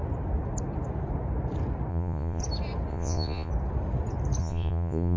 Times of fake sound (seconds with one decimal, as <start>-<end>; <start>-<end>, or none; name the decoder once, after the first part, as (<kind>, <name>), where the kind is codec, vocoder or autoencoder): 1.9-2.4 (vocoder, Vocos); 2.9-3.5; 4.4-5.2